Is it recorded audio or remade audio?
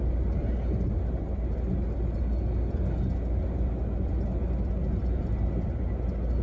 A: recorded